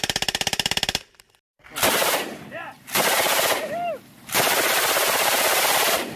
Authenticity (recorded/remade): remade